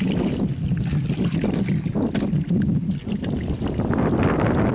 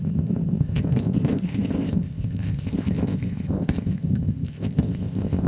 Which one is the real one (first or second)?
first